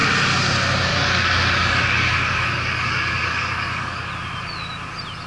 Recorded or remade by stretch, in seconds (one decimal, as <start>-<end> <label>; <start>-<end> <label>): 0.0-0.9 recorded; 0.9-4.1 remade; 4.1-5.3 recorded